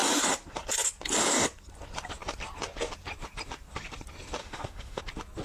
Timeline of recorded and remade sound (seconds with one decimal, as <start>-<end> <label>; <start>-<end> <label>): 0.0-4.4 recorded; 4.4-5.0 remade; 5.0-5.4 recorded

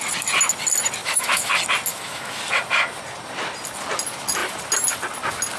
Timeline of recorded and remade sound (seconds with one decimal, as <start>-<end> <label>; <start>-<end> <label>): 0.0-1.0 recorded; 1.0-1.5 remade; 1.5-1.9 recorded; 1.9-2.4 remade; 2.4-5.6 recorded

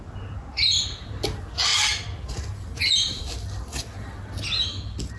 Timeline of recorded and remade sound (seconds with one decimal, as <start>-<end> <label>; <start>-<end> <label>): 0.0-5.2 recorded